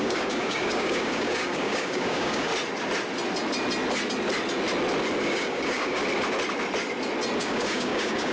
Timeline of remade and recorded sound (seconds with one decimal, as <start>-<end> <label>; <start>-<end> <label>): 0.0-2.5 remade; 2.5-5.2 recorded; 5.2-6.0 remade; 6.0-7.4 recorded; 7.4-8.3 remade